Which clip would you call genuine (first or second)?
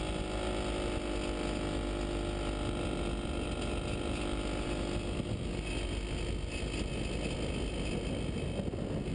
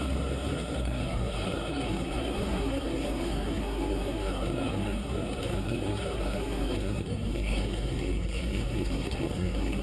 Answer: first